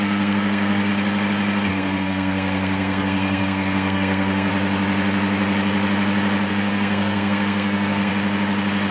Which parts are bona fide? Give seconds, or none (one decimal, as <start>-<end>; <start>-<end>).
0.9-1.7; 4.5-6.5; 8.1-8.9